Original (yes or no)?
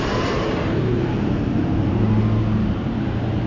no